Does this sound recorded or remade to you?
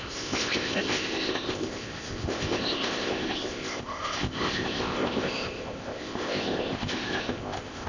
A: remade